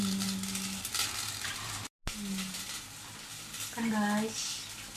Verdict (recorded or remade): recorded